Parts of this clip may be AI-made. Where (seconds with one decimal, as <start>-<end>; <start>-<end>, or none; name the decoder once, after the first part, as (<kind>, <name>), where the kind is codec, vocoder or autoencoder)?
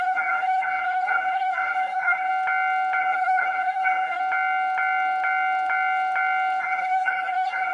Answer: 0.0-2.3 (codec, SNAC); 3.0-4.2; 6.6-7.7